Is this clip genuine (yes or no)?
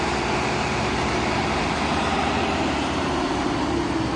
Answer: no